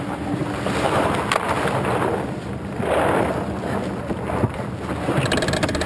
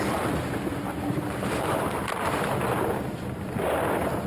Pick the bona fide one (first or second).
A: first